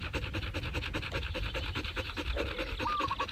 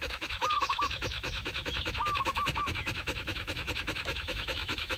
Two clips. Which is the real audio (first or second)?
first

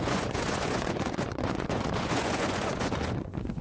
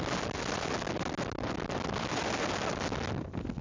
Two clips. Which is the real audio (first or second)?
second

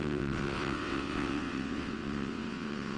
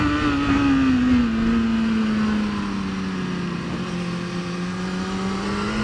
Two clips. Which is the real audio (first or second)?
second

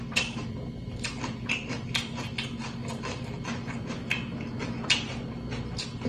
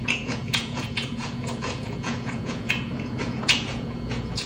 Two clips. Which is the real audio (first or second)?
first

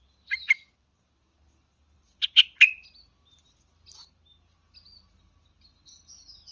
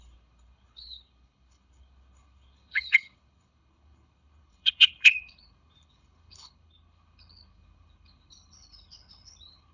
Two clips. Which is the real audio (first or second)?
first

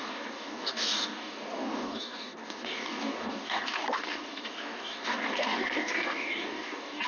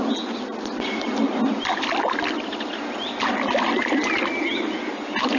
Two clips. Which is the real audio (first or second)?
second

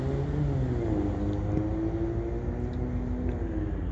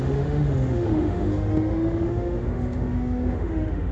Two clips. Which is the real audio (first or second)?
first